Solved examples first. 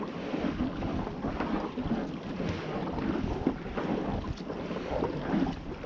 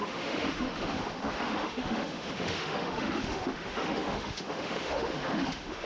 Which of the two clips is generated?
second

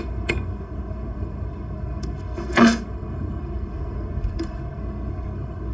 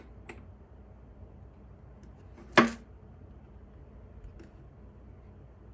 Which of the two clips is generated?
first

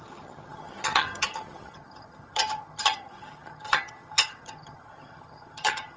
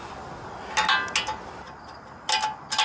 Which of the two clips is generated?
first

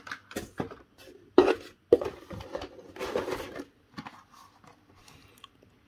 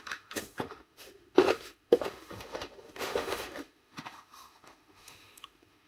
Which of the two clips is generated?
second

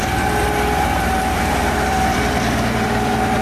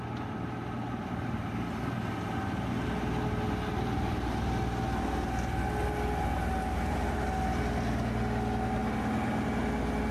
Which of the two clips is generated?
first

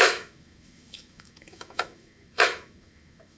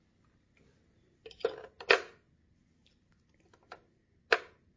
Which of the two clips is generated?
first